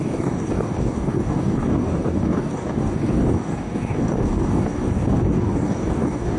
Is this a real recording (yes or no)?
no